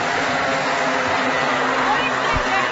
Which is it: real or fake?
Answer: real